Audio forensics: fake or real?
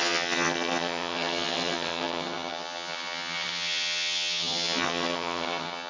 fake